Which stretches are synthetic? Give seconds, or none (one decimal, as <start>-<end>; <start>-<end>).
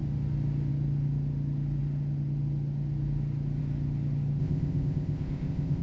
4.4-5.8